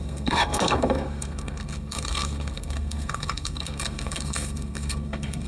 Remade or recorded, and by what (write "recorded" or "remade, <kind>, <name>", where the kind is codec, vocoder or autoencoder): remade, codec, SNAC